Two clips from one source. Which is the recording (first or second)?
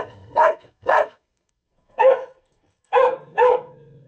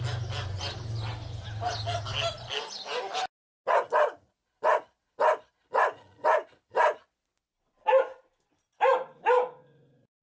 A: second